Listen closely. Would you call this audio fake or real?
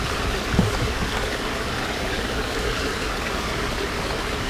fake